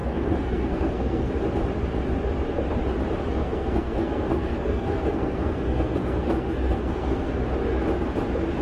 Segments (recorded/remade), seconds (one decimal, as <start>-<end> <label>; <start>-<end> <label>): 0.0-1.3 remade; 1.3-3.4 recorded; 3.4-7.3 remade; 7.3-8.6 recorded